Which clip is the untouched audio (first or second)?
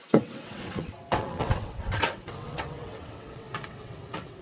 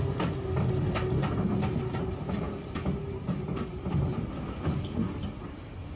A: second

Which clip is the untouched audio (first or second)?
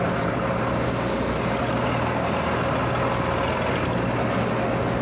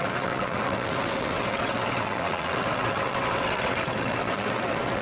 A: first